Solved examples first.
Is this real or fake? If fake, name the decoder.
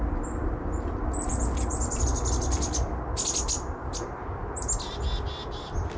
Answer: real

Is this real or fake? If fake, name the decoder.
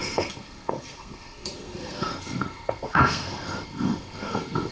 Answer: fake, codec, SNAC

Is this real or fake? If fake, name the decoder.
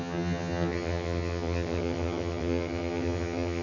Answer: fake, vocoder, HiFi-GAN